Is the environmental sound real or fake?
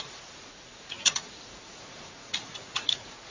fake